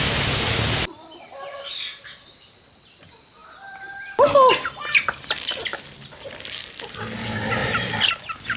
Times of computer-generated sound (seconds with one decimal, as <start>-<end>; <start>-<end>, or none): 7.6-8.1